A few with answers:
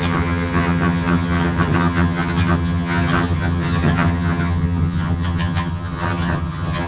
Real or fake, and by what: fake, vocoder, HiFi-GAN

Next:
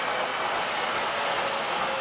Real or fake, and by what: real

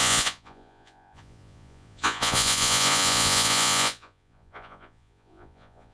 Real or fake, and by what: fake, vocoder, Vocos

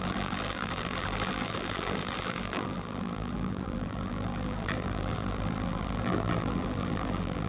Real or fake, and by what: fake, vocoder, BigVGAN v2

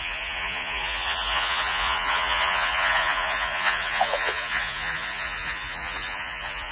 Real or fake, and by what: fake, vocoder, Vocos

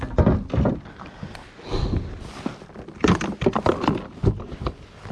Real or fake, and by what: real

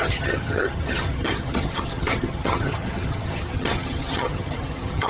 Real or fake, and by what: fake, vocoder, HiFi-GAN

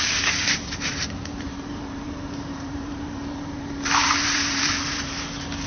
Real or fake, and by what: fake, vocoder, BigVGAN v2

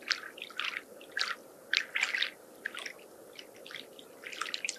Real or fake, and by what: real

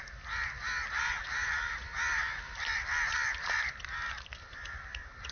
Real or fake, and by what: real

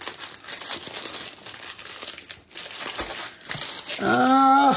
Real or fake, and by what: real